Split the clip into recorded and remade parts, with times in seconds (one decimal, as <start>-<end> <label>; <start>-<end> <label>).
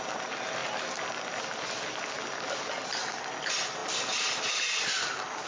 0.0-5.5 recorded